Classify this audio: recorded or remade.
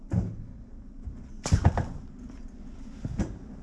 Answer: recorded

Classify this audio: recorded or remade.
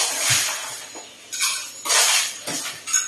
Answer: recorded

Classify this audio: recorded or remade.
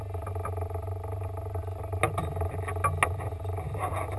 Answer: recorded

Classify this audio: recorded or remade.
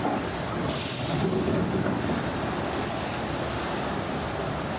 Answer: recorded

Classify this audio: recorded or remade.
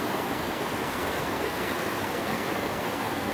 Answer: remade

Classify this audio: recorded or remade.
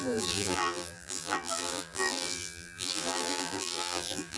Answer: remade